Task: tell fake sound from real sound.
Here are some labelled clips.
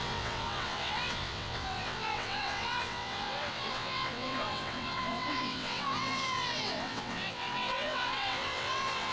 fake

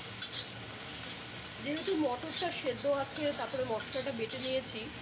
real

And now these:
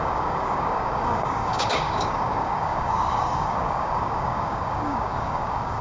fake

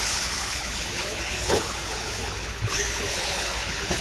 fake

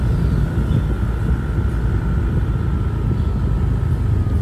real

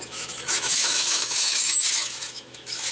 fake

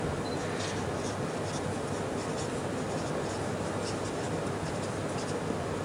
real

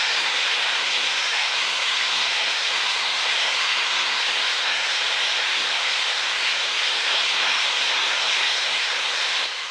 fake